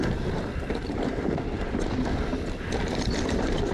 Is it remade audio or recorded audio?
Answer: recorded